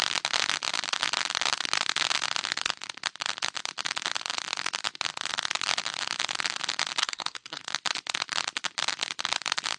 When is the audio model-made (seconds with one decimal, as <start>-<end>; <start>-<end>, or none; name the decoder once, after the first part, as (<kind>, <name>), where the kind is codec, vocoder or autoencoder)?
7.0-7.6 (codec, SNAC)

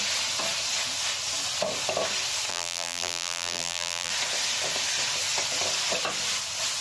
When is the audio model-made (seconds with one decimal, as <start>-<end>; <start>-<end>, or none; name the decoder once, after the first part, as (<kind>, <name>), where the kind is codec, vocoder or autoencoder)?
2.5-4.1 (vocoder, BigVGAN v2)

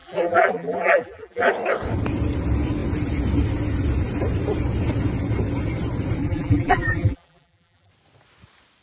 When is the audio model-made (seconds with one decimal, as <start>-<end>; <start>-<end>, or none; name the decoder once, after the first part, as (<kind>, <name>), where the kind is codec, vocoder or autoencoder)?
0.0-1.5 (vocoder, BigVGAN v2); 6.2-7.9

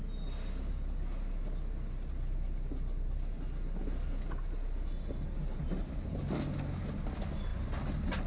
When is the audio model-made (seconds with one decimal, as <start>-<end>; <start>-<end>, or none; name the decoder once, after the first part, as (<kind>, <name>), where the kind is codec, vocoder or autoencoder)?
none

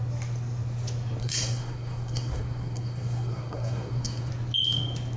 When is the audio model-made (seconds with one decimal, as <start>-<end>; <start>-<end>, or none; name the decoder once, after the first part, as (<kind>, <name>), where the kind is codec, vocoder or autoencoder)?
1.2-4.3 (codec, SNAC)

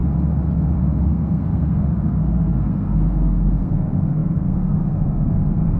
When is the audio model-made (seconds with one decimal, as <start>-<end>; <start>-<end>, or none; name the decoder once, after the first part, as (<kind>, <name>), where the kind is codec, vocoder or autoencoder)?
1.0-5.8 (codec, SNAC)